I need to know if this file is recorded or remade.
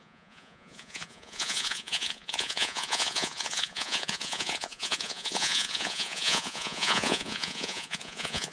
remade